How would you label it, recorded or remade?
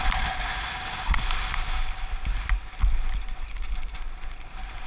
recorded